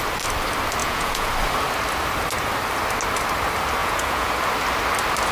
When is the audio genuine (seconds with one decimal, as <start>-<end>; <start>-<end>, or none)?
0.0-0.8; 1.3-3.8; 4.3-5.3